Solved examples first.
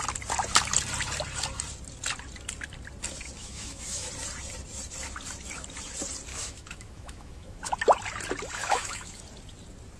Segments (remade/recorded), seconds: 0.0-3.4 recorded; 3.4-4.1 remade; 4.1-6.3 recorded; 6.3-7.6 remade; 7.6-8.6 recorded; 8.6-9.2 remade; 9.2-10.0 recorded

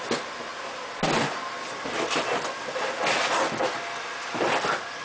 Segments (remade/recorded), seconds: 0.0-5.0 recorded